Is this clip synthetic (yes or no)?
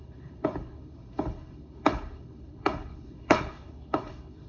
yes